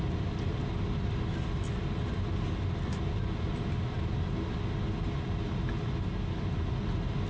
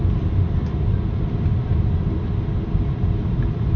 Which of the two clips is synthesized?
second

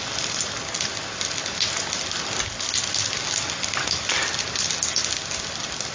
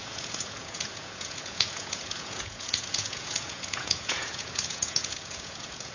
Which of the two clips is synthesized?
second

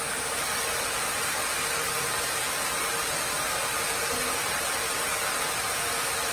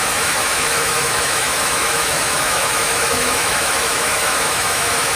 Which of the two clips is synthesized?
second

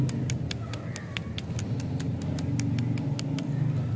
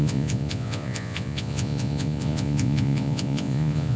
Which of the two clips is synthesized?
second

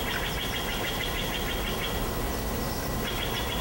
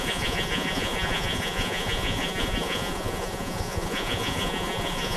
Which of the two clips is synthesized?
second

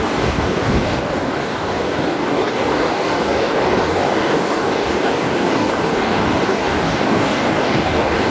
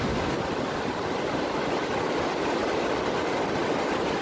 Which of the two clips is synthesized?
first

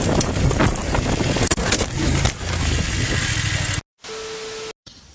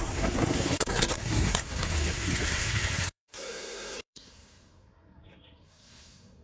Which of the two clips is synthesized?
second